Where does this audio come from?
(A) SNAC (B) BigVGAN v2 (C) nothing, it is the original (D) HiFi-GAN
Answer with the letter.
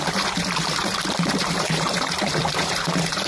B